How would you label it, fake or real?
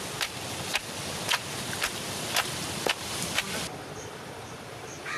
fake